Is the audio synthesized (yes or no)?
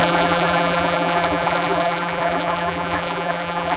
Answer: yes